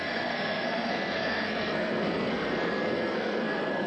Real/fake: fake